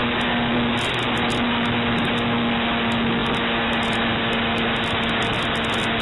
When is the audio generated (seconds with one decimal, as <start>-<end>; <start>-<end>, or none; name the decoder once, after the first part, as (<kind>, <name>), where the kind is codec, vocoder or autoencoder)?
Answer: none